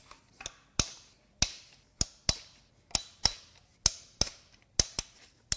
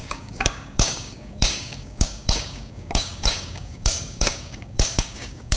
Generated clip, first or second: second